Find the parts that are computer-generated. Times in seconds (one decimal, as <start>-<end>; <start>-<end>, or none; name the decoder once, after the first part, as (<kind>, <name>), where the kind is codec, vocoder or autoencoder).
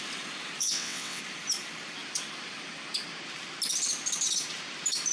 0.6-1.2 (vocoder, WaveNeXt)